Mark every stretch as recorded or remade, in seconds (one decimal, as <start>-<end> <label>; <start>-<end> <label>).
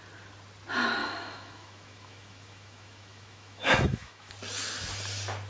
0.0-1.0 recorded; 1.0-4.3 remade; 4.3-5.5 recorded